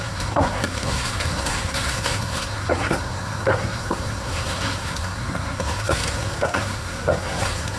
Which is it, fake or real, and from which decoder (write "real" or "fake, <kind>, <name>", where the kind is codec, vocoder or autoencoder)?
fake, codec, SNAC